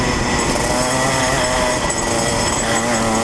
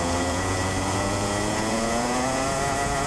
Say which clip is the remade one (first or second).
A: second